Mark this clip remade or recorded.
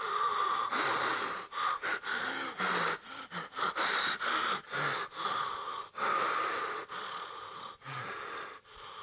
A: recorded